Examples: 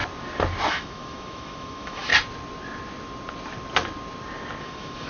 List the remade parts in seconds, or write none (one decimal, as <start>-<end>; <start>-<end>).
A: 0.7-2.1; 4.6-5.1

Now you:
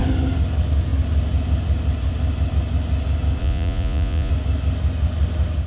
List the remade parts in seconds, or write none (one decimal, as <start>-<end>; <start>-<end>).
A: 3.4-4.3

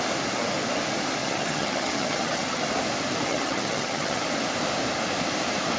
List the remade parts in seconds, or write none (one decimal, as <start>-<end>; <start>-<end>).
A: 1.2-2.6; 3.3-4.2

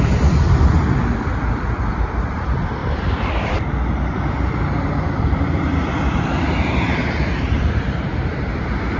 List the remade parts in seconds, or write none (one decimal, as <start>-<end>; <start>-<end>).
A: 0.0-0.7; 1.9-9.0

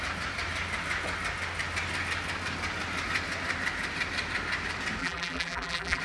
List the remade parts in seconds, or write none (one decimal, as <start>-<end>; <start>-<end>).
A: 5.0-6.0

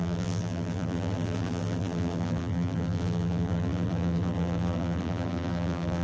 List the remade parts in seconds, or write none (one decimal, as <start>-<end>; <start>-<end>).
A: 0.0-6.0